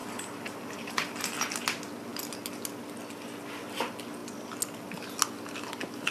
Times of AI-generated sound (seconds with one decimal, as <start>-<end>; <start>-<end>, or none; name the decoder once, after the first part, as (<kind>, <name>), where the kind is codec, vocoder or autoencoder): 0.0-1.2 (vocoder, BigVGAN v2)